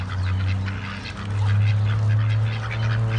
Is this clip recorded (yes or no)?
yes